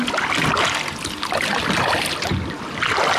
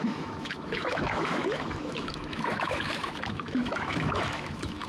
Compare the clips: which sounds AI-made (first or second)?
second